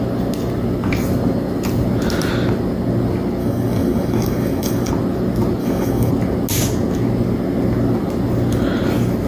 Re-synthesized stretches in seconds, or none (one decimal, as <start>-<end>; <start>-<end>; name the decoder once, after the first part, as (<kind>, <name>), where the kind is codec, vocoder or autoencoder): 3.4-4.9 (codec, DAC); 5.6-6.1